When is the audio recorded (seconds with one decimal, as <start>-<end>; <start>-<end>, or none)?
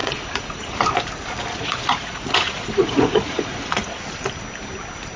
0.8-1.5; 4.0-5.2